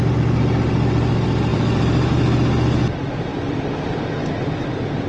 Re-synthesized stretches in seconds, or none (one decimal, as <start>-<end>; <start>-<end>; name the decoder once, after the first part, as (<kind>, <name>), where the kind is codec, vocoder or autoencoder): 1.5-2.1 (vocoder, BigVGAN v2); 3.3-5.1

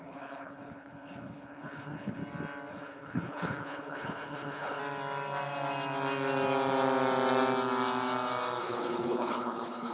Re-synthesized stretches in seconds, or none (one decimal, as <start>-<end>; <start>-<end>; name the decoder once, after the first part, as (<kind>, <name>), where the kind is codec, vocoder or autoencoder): 0.0-2.2 (codec, HILCodec); 2.7-4.8; 8.6-9.9

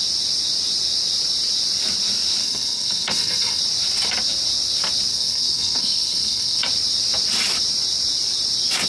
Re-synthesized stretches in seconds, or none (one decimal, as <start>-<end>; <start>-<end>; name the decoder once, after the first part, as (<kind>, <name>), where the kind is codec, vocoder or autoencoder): 2.4-3.6 (codec, SNAC); 5.1-6.6

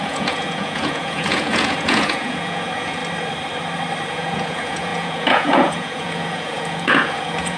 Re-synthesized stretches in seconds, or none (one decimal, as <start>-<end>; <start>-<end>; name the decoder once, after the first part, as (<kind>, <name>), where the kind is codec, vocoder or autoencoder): 0.0-3.0 (vocoder, Vocos); 4.1-7.6

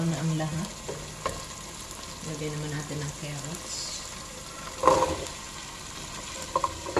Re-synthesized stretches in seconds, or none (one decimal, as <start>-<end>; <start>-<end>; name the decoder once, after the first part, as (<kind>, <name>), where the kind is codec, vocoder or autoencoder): 0.0-0.5 (vocoder, BigVGAN v2); 4.7-7.0

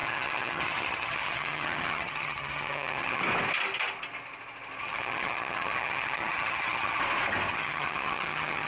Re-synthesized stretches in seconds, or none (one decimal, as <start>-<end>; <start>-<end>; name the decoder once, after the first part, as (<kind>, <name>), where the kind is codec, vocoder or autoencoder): 0.0-3.2 (vocoder, HiFi-GAN); 4.8-7.0; 7.5-8.7

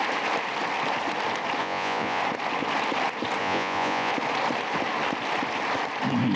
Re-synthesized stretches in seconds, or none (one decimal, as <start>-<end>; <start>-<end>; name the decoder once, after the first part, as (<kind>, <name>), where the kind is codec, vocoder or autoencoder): 1.6-2.2 (vocoder, Vocos); 3.4-4.1